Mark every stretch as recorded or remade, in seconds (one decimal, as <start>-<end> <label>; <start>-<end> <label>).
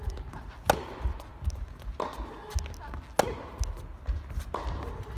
0.0-5.2 recorded